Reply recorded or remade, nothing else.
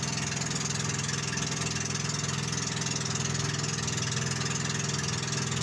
recorded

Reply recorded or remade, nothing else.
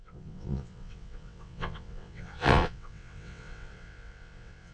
remade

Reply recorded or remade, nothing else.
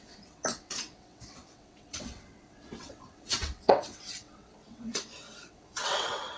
remade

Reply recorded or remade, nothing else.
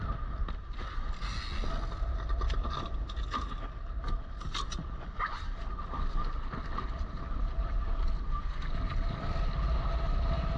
recorded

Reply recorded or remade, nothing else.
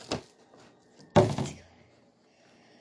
recorded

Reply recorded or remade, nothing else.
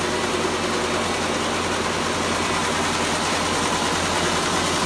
recorded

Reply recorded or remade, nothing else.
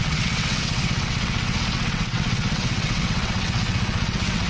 remade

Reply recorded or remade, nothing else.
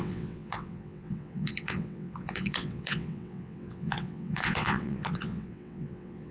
remade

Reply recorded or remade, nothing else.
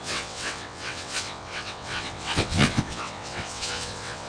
remade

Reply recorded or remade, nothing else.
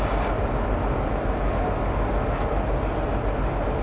recorded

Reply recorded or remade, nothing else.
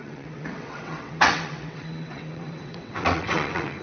remade